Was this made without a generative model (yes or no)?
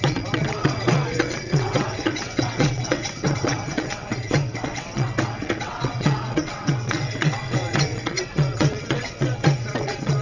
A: no